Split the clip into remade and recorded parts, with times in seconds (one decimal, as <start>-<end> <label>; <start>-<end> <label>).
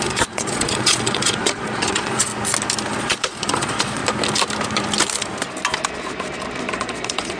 0.0-2.3 remade; 2.3-3.0 recorded; 3.0-4.0 remade; 4.0-6.7 recorded; 6.7-7.4 remade